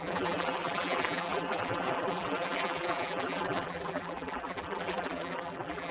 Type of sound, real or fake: fake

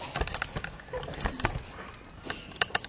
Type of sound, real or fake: real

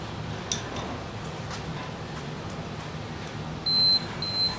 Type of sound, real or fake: real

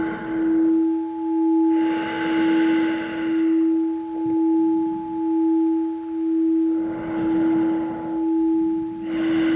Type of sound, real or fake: real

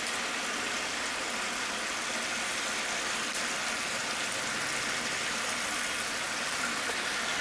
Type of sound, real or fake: real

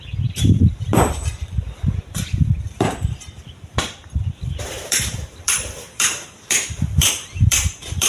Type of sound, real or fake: fake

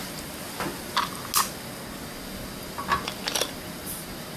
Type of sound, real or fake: real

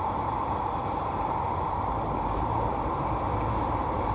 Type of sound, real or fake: fake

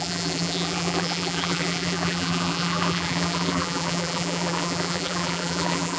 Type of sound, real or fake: fake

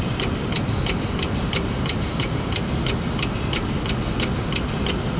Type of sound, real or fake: real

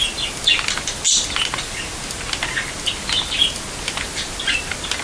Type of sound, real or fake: real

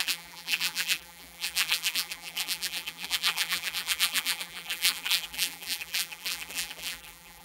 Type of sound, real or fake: fake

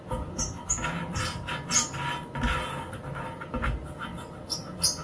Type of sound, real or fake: real